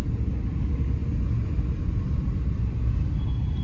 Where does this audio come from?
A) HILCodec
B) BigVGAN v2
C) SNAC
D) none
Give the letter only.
D